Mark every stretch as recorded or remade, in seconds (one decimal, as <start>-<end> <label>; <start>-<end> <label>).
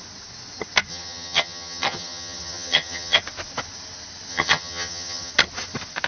0.0-0.9 recorded; 0.9-3.2 remade; 3.2-4.3 recorded; 4.3-5.3 remade; 5.3-6.1 recorded